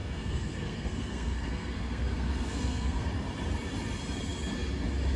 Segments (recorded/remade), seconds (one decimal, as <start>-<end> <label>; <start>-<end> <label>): 0.0-3.1 remade; 3.1-5.2 recorded